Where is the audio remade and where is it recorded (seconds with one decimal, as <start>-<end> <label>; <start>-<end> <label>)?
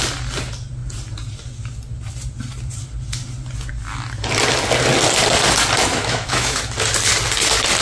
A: 0.0-5.9 recorded; 5.9-6.6 remade; 6.6-7.8 recorded